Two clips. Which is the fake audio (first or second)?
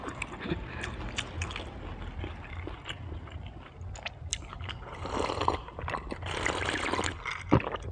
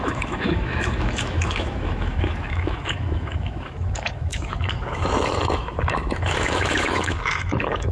second